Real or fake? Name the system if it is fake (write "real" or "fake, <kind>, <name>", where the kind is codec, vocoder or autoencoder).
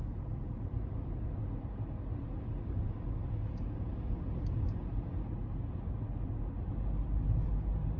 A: real